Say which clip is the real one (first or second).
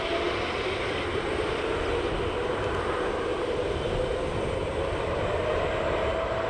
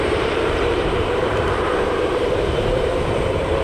first